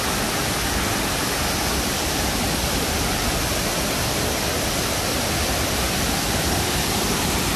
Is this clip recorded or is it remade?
recorded